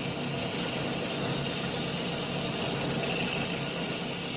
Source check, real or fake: real